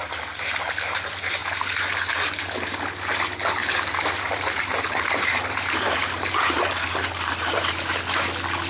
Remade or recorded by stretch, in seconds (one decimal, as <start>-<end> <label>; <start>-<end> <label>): 0.0-3.6 recorded; 3.6-7.9 remade; 7.9-8.7 recorded